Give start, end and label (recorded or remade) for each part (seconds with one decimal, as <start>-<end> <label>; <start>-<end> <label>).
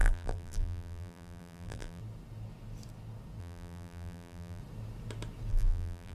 0.0-2.0 remade; 2.0-3.4 recorded; 3.4-4.6 remade; 4.6-5.5 recorded; 5.5-6.1 remade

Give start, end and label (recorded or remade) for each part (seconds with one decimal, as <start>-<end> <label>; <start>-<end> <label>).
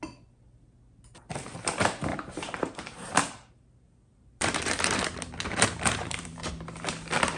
0.0-2.1 recorded; 2.1-6.5 remade; 6.5-7.4 recorded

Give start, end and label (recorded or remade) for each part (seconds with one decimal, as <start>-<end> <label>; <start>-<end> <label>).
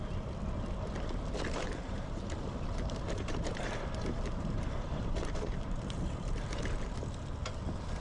0.0-1.8 recorded; 1.8-6.6 remade; 6.6-8.0 recorded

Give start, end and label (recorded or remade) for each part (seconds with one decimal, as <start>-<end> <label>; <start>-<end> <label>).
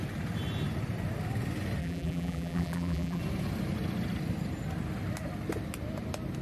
0.0-1.8 recorded; 1.8-3.2 remade; 3.2-6.4 recorded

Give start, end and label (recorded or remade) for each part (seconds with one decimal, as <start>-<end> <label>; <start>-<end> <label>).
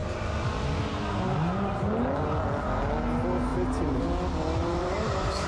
0.0-4.6 recorded; 4.6-5.5 remade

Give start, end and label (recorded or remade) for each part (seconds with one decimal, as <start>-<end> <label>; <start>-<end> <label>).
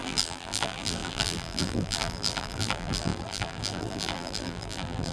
0.0-5.1 remade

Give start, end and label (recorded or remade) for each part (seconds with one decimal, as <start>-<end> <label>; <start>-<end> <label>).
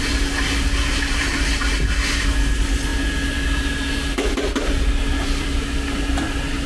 0.0-6.7 recorded